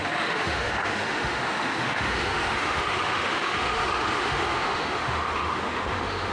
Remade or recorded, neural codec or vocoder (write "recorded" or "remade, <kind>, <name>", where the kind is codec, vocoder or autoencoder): remade, autoencoder, DAC-VAE